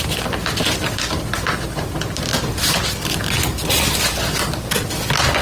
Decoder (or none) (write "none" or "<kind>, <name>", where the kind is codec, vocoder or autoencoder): none